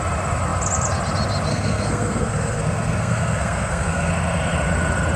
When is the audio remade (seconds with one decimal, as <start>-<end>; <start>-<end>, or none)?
1.5-4.1